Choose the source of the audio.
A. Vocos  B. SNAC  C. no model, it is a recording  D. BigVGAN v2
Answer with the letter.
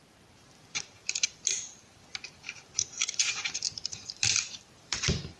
D